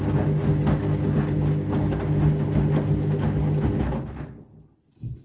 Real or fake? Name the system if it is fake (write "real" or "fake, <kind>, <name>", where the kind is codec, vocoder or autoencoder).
real